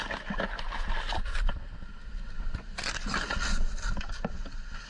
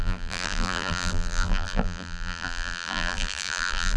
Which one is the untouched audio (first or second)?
first